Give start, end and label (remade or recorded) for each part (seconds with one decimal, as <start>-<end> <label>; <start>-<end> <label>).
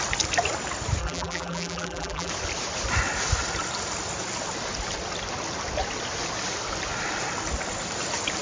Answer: 0.0-1.0 recorded; 1.0-2.3 remade; 2.3-8.4 recorded